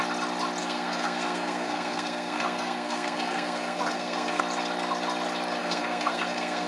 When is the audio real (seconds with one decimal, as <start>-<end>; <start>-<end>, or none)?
0.0-0.6; 4.4-5.6